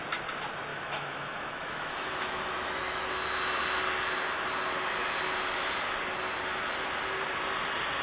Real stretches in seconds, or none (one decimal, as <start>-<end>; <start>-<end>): 0.0-0.7; 3.1-8.0